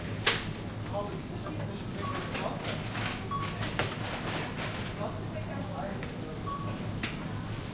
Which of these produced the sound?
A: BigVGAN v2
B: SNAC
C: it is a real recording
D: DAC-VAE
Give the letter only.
C